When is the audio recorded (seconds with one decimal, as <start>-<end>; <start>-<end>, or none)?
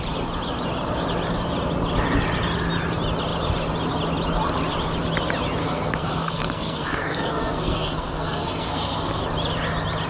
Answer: 0.0-5.6; 9.2-10.1